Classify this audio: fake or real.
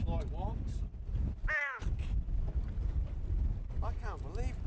real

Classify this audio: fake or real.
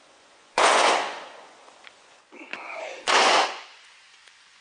fake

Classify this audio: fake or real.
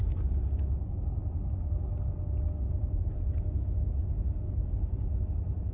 real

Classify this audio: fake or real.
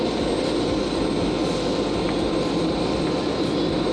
real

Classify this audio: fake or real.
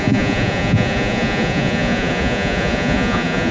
fake